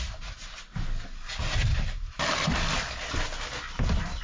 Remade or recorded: recorded